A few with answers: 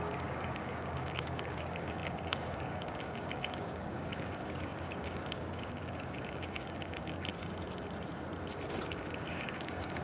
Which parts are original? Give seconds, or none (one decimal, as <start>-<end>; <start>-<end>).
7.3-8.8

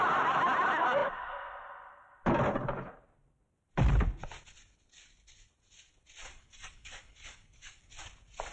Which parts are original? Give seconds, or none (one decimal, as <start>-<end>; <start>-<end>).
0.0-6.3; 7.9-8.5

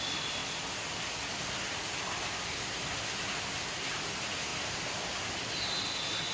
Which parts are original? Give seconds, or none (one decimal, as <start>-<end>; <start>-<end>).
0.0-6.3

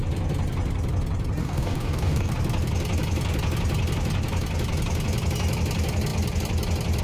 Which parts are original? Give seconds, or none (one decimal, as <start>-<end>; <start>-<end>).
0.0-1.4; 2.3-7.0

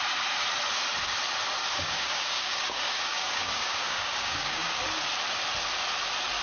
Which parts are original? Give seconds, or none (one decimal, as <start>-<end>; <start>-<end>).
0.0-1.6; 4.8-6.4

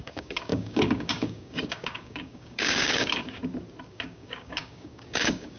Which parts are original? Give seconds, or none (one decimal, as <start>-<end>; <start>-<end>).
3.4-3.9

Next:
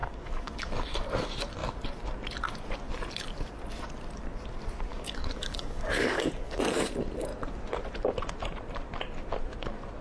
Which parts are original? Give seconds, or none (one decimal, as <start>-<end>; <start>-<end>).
0.7-4.9; 6.6-10.0

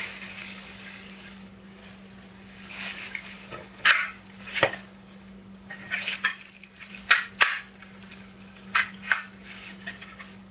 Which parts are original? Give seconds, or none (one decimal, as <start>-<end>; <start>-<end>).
1.8-2.3; 6.3-6.9; 7.5-8.1